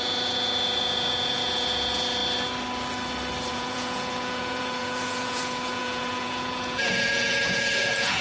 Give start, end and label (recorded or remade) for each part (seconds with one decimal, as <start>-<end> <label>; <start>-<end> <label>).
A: 0.0-2.2 remade; 2.2-3.5 recorded; 3.5-8.2 remade